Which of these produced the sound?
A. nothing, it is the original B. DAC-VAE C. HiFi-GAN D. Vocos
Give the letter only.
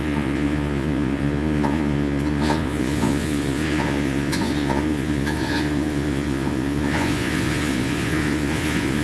D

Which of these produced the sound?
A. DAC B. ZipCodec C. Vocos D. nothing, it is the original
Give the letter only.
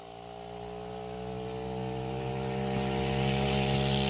D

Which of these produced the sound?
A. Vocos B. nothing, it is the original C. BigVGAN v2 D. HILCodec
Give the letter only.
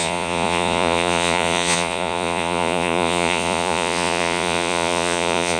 A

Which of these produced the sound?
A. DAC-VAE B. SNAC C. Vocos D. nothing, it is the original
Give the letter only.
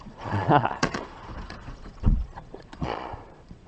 C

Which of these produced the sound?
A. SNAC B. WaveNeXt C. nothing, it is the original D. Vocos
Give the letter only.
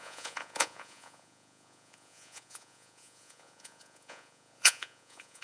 D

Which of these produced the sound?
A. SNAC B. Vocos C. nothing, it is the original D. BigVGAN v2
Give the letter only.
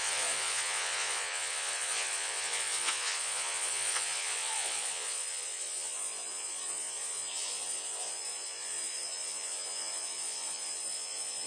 B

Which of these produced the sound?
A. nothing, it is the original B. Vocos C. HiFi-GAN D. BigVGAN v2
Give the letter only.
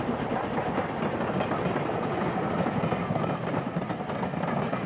A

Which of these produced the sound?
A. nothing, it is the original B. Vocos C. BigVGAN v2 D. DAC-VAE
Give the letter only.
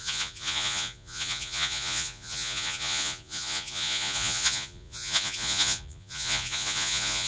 B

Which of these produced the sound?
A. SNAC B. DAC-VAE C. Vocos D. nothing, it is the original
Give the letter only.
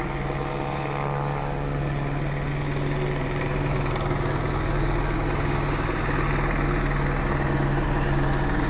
D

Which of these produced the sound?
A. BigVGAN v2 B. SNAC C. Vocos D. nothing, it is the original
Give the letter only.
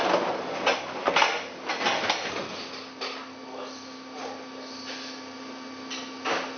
D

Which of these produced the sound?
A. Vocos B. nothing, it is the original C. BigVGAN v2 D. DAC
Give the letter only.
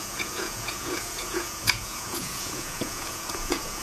A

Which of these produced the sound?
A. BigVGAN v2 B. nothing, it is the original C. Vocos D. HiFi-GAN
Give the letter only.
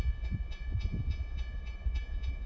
C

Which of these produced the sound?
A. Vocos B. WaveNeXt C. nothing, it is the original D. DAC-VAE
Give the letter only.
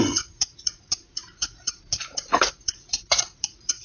A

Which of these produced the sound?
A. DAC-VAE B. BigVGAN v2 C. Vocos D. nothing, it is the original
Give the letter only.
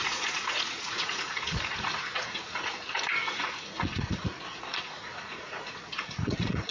C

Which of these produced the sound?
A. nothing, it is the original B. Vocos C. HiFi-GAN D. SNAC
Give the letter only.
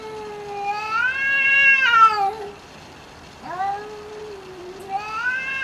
A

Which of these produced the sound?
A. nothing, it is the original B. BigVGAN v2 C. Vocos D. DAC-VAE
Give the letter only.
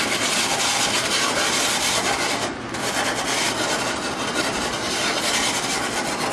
A